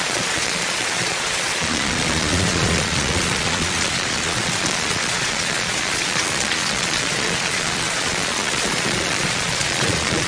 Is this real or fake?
fake